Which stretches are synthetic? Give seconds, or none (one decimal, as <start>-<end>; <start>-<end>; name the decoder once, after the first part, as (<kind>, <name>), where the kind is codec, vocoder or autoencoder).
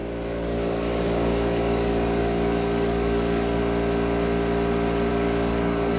0.0-3.6 (codec, DAC); 5.1-6.0